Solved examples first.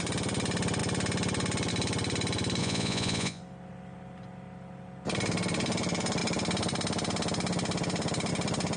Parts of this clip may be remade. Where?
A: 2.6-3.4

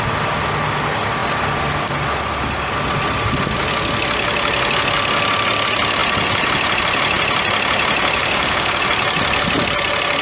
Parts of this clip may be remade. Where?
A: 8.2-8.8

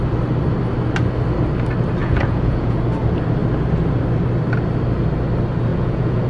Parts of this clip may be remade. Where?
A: 2.0-2.8; 5.7-6.3

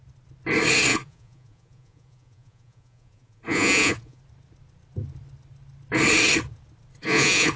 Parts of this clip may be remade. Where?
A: 0.9-4.2; 7.0-7.6

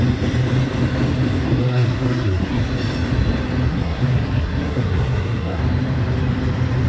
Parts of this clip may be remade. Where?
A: 1.6-2.6; 3.7-5.6